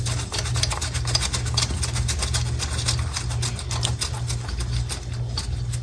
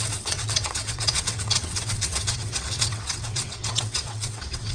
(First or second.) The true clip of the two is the first